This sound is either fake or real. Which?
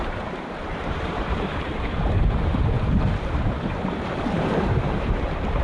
fake